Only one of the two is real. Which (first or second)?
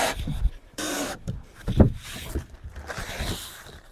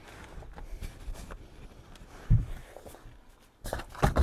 second